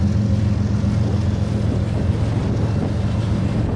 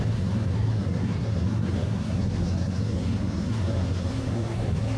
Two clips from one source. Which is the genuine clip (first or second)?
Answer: first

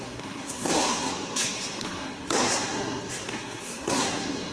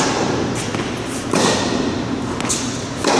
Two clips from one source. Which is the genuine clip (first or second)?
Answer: second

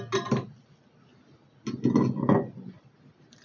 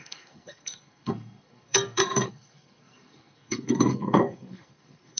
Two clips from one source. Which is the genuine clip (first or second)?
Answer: first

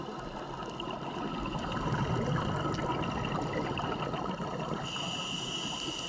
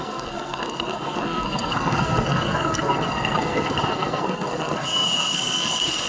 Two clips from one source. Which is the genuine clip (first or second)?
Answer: first